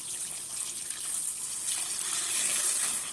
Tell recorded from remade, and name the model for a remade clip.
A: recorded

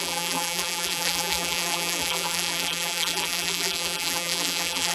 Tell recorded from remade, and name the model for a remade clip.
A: remade, vocoder, BigVGAN v2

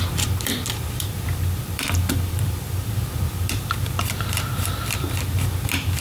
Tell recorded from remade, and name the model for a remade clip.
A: remade, vocoder, BigVGAN v2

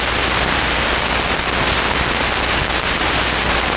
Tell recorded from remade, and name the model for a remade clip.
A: recorded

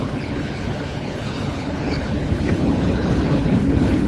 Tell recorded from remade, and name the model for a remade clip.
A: remade, codec, HILCodec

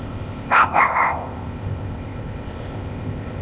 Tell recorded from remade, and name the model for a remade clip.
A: remade, codec, ZipCodec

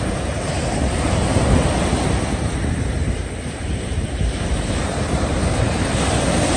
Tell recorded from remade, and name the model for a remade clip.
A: remade, vocoder, BigVGAN v2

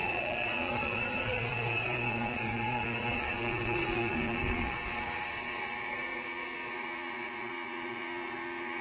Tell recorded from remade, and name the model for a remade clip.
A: remade, vocoder, Vocos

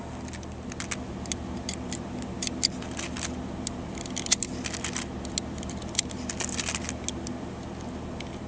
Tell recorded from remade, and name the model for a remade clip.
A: recorded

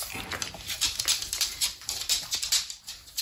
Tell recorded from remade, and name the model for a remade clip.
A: remade, vocoder, BigVGAN v2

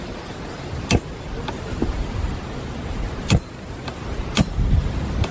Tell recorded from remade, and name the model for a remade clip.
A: recorded